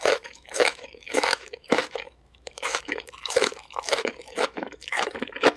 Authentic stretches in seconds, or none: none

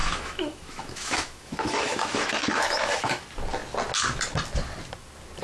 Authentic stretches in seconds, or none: 3.2-5.4

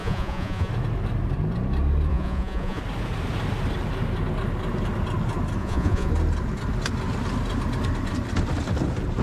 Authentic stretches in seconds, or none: 0.7-2.1; 2.8-5.6; 6.1-9.2

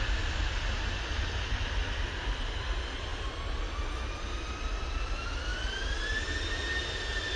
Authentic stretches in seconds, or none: 0.0-7.4

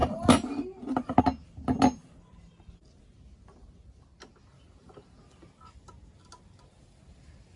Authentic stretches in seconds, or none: 0.0-7.6

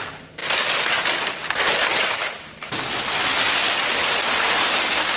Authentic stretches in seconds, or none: 0.0-5.2